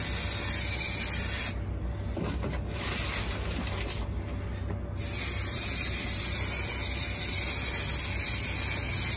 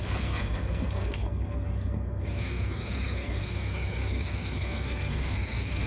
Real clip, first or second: first